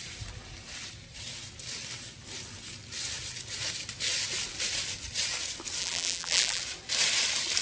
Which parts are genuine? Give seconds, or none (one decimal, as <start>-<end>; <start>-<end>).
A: 0.0-5.8; 6.6-7.6